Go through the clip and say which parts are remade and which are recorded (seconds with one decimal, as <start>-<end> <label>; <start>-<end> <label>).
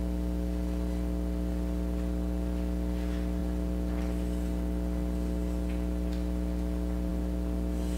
0.0-8.0 recorded